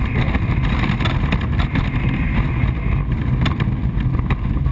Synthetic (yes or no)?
no